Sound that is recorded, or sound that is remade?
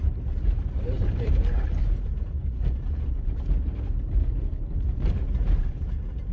remade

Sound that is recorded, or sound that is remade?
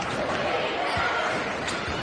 remade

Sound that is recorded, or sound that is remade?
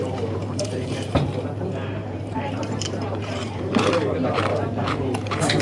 remade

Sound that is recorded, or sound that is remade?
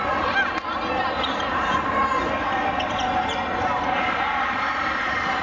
recorded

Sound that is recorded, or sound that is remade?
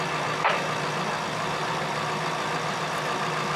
recorded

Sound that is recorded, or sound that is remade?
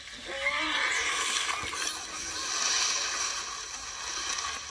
recorded